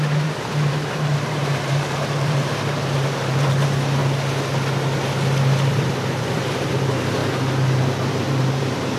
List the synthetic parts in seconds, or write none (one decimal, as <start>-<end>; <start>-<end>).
0.0-4.0; 5.7-7.2; 7.8-9.0